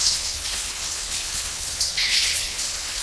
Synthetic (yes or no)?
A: yes